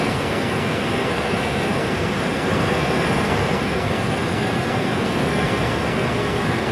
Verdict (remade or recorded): remade